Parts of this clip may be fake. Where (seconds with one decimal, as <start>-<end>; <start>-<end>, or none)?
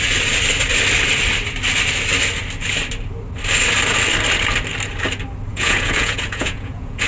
5.5-7.1